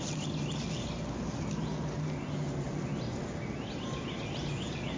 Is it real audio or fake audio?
real